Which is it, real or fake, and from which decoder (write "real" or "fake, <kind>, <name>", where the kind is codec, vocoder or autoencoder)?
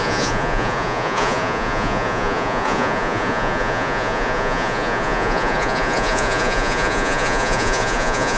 fake, vocoder, Vocos